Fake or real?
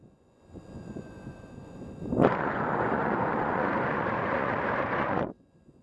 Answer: fake